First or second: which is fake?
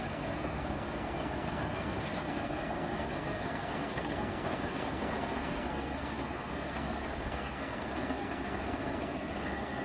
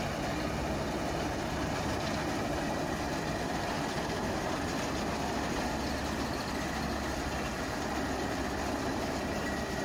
first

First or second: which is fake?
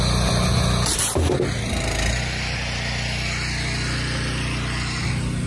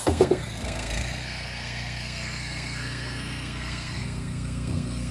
second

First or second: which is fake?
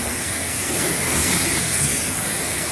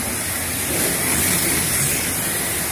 first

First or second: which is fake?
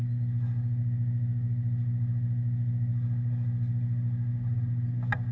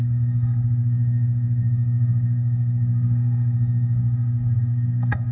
second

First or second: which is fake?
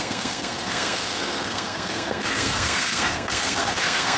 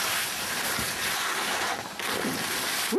first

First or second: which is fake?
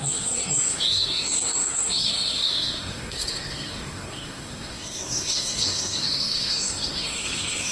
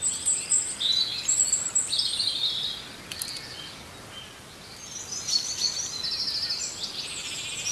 first